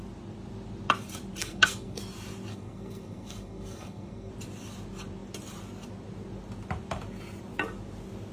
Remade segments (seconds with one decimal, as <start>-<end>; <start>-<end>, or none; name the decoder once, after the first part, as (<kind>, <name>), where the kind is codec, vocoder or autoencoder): 1.4-2.0 (codec, SNAC); 2.5-4.3